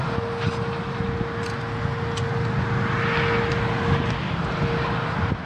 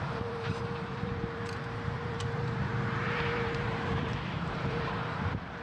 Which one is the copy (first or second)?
second